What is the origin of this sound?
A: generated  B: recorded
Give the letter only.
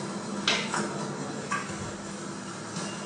B